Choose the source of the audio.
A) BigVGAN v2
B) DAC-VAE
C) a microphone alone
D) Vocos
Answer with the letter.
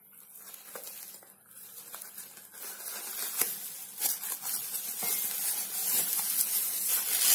C